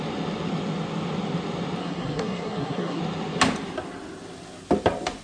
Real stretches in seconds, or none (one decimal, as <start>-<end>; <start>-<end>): 0.0-1.8; 3.0-5.2